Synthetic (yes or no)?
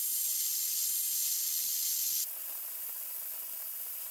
no